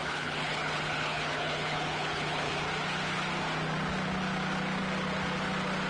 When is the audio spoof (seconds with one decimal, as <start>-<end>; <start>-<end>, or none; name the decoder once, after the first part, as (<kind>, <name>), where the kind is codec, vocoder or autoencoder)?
0.0-2.5 (codec, HILCodec)

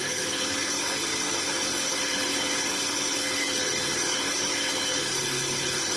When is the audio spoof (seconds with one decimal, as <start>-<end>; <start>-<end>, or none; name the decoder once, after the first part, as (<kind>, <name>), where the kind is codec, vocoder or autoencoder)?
0.0-6.0 (codec, HILCodec)

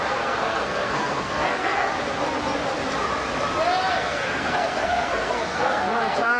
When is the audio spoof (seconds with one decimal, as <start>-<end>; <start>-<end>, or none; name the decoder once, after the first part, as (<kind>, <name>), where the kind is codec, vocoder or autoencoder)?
0.0-1.9 (codec, SNAC); 3.9-6.4

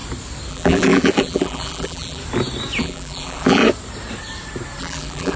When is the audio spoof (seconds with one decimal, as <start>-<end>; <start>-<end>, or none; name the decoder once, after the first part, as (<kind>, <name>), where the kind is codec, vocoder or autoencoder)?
0.5-2.2 (vocoder, BigVGAN v2); 2.8-3.6; 4.8-5.4